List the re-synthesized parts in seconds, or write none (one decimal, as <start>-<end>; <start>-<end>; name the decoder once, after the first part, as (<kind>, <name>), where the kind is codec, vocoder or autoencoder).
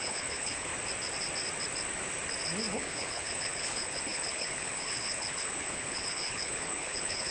0.0-0.7 (codec, HILCodec); 2.7-7.3